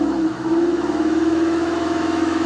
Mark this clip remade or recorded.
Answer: remade